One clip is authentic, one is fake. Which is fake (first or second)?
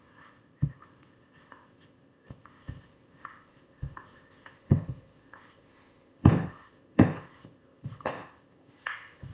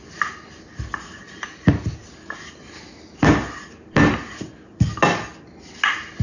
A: first